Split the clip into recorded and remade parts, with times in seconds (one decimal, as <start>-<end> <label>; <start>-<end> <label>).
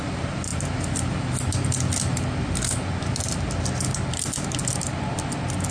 0.0-5.7 recorded